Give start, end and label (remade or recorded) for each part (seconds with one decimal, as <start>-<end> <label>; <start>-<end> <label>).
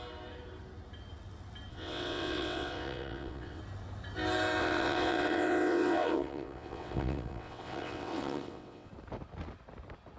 0.0-1.7 recorded; 1.7-3.6 remade; 3.6-4.6 recorded; 4.6-8.9 remade; 8.9-10.2 recorded